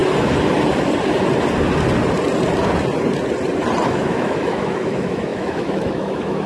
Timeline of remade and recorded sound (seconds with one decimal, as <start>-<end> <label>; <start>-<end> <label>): 0.0-3.9 recorded; 3.9-6.5 remade